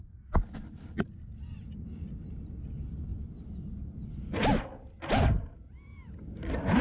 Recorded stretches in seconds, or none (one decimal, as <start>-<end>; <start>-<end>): 0.0-6.8